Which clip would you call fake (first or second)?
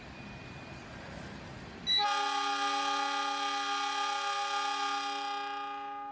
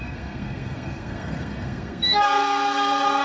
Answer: second